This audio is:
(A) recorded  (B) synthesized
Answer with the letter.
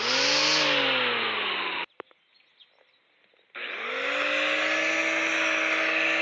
A